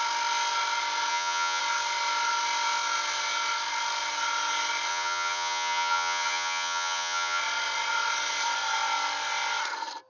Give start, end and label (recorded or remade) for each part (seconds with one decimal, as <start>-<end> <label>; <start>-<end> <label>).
0.0-1.1 recorded; 1.1-1.6 remade; 1.6-4.9 recorded; 4.9-7.4 remade; 7.4-10.1 recorded